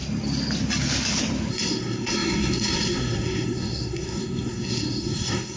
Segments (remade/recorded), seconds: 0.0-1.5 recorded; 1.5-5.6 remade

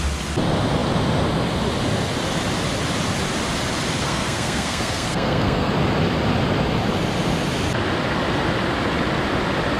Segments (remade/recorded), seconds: 0.0-4.0 recorded; 4.0-5.7 remade; 5.7-9.8 recorded

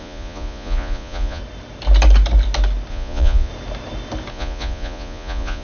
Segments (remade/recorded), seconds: 0.0-1.4 remade; 1.4-2.9 recorded; 2.9-3.5 remade; 3.5-4.3 recorded; 4.3-5.6 remade

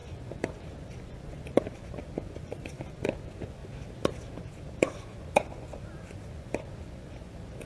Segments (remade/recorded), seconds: 0.0-3.6 remade; 3.6-4.3 recorded; 4.3-7.7 remade